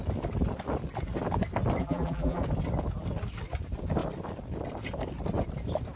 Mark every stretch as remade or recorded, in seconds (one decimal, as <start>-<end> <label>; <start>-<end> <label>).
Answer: 0.0-1.8 recorded; 1.8-2.4 remade; 2.4-6.0 recorded